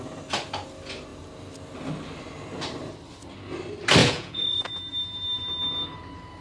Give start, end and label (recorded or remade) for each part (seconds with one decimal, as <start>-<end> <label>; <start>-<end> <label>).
0.0-4.0 recorded; 4.0-4.7 remade; 4.7-6.4 recorded